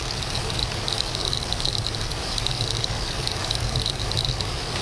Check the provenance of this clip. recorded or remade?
remade